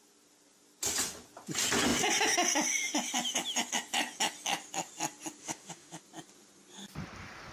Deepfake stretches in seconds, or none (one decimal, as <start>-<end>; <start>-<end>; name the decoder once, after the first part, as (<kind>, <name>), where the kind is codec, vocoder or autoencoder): 5.4-6.0 (autoencoder, DAC-VAE)